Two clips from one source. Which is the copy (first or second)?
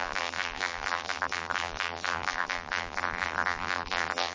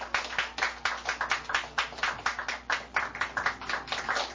first